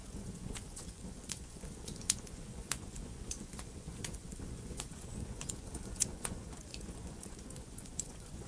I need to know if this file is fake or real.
fake